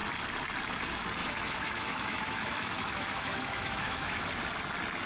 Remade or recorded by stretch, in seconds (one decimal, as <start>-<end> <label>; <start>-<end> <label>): 0.0-1.2 recorded; 1.2-4.3 remade; 4.3-5.1 recorded